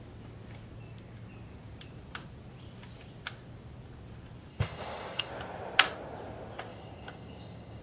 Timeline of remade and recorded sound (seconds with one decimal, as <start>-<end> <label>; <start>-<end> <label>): 0.0-4.5 recorded; 4.5-5.3 remade; 5.3-6.7 recorded; 6.7-7.8 remade